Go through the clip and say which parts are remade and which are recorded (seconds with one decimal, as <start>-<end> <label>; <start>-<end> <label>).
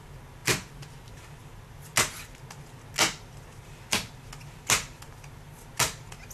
0.0-6.3 recorded